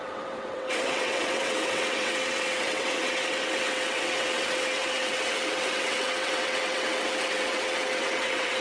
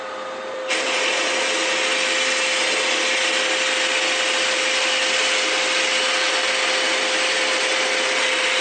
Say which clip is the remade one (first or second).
first